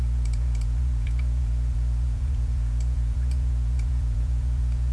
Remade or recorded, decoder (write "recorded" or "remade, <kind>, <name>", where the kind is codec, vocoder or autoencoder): remade, vocoder, Vocos